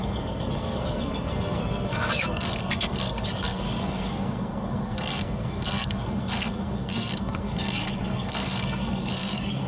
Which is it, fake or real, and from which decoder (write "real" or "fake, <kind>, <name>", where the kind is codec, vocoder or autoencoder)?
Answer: fake, codec, SNAC